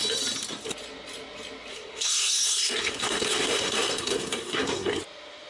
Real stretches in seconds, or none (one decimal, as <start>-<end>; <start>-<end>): 0.0-1.7; 5.0-5.5